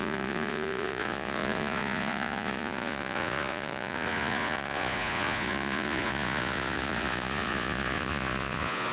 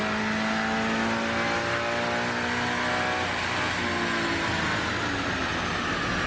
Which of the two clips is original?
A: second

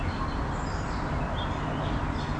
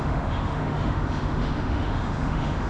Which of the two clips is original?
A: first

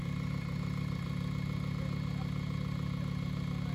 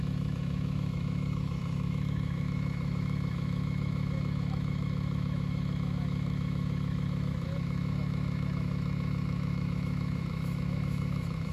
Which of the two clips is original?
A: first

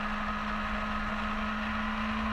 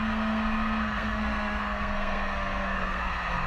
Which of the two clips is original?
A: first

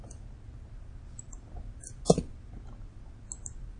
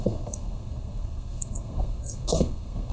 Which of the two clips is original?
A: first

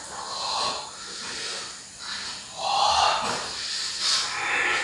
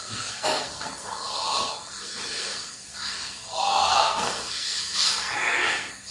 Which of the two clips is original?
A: first